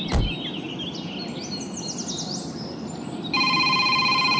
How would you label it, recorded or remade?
recorded